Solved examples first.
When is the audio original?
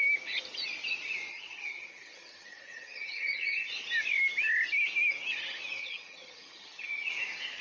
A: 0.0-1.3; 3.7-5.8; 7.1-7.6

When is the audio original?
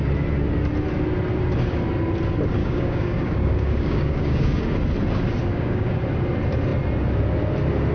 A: 0.0-2.6; 4.6-5.4; 6.0-7.9